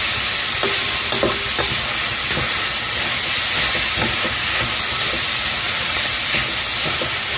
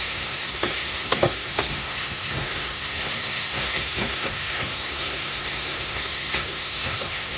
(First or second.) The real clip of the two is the first